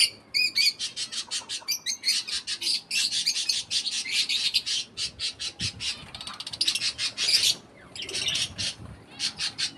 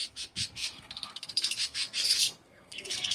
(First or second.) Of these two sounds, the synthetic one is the second